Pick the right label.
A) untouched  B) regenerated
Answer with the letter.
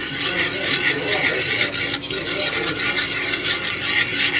A